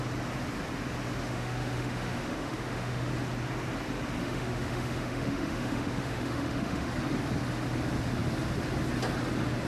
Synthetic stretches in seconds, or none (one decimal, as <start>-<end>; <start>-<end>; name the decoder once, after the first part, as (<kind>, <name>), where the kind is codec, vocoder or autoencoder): 1.2-3.1 (autoencoder, DAC-VAE); 4.2-6.9